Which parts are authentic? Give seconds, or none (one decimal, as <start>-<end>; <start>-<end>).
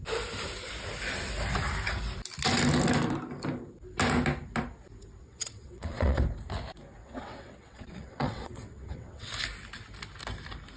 0.0-5.2; 6.2-7.0; 9.3-10.8